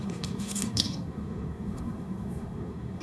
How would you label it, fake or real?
fake